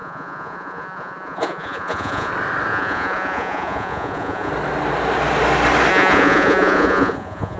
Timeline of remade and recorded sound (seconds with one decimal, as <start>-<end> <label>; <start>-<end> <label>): 0.0-2.3 remade; 2.3-2.7 recorded; 2.7-4.5 remade; 4.5-5.9 recorded; 5.9-7.6 remade